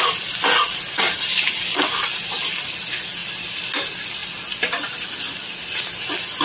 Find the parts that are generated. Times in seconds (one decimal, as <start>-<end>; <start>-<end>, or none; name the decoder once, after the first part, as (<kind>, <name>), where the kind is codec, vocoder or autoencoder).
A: none